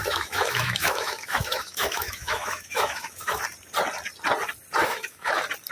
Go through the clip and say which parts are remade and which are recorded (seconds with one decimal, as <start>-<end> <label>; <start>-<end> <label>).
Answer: 0.0-3.4 remade; 3.4-4.8 recorded; 4.8-5.3 remade; 5.3-5.7 recorded